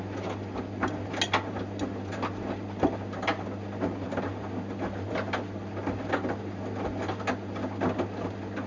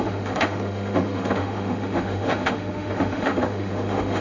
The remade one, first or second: second